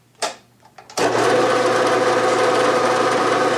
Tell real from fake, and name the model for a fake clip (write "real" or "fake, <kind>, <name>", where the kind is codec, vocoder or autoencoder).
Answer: real